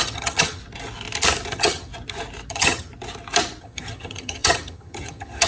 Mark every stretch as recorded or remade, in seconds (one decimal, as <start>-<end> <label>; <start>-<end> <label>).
0.0-0.6 remade; 0.6-1.5 recorded; 1.5-1.9 remade; 1.9-2.5 recorded; 2.5-2.9 remade; 2.9-3.6 recorded; 3.6-5.5 remade